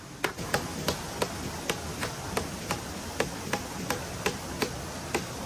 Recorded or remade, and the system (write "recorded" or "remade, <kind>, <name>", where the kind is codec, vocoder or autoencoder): recorded